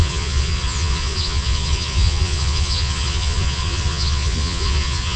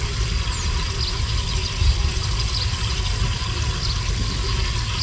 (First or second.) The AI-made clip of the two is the first